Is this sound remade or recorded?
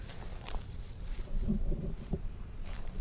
remade